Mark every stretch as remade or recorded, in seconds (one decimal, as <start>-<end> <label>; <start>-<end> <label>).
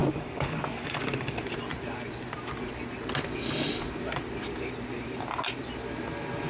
0.0-1.4 remade; 1.4-6.5 recorded